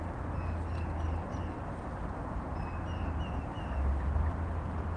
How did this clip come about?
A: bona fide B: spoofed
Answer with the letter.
A